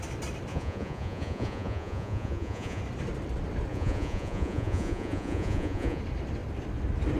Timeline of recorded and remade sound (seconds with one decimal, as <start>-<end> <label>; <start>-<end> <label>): 0.0-0.5 recorded; 0.5-2.8 remade; 2.8-3.7 recorded; 3.7-6.0 remade; 6.0-7.2 recorded